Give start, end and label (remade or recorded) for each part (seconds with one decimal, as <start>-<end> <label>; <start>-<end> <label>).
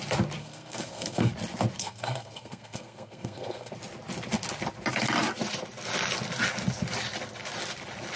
0.0-0.4 recorded; 0.4-1.3 remade; 1.3-1.8 recorded; 1.8-3.7 remade; 3.7-8.2 recorded